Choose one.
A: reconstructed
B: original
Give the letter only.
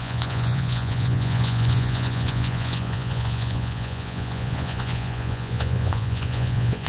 A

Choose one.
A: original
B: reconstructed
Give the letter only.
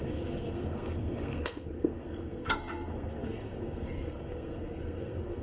B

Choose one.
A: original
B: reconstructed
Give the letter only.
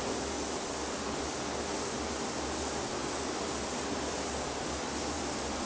A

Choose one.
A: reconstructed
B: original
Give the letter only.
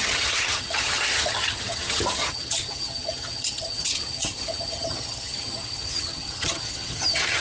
A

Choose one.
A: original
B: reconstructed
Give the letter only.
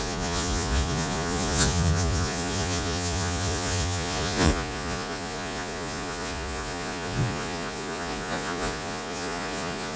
B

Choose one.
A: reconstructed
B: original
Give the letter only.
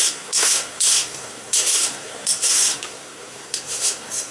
A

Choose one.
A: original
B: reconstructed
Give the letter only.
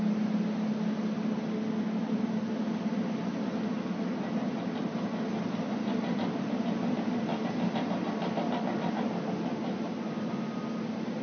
A